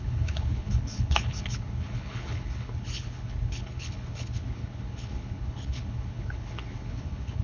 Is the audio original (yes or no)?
no